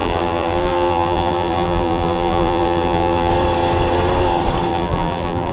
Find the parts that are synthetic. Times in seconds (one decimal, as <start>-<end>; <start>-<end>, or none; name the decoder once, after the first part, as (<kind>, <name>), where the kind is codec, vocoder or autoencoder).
0.0-3.3 (vocoder, BigVGAN v2); 4.7-5.5